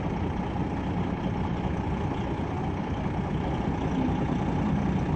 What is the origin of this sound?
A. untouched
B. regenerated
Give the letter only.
A